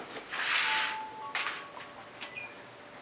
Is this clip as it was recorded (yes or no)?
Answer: yes